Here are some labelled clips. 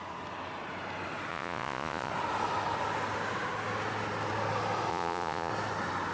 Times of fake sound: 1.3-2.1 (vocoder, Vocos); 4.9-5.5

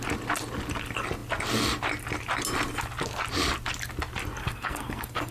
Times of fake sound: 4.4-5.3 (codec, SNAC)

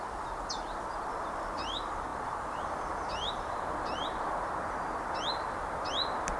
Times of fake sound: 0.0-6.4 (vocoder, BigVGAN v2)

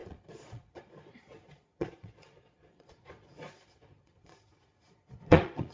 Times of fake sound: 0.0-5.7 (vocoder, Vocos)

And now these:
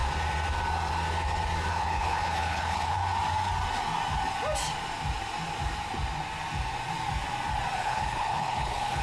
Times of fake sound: 1.7-3.0 (codec, HILCodec); 7.8-9.0

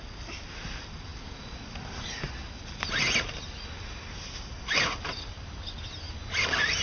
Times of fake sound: none

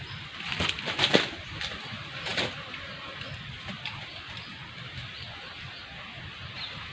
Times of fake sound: none

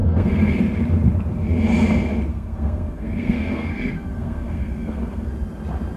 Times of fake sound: 0.0-0.6 (codec, SNAC); 2.3-5.3